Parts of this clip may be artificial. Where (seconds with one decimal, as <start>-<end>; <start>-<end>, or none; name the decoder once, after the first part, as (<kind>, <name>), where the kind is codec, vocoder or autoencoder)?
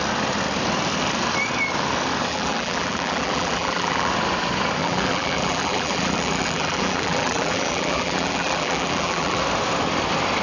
2.3-4.1 (vocoder, BigVGAN v2); 4.8-9.4